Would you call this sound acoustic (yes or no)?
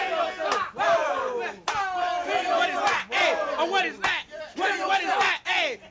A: yes